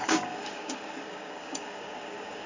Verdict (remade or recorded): remade